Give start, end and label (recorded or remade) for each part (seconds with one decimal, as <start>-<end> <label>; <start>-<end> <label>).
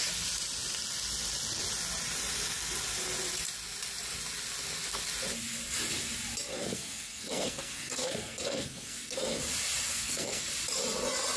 0.0-6.5 recorded; 6.5-9.4 remade; 9.4-9.9 recorded; 9.9-10.5 remade; 10.5-11.4 recorded